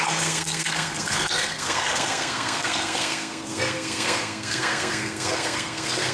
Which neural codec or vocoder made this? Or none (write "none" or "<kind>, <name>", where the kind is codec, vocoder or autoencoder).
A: codec, SNAC